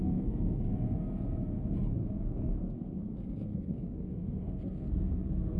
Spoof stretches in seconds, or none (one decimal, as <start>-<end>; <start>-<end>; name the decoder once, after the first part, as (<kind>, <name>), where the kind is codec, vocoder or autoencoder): 0.0-0.6 (codec, SNAC); 2.0-5.6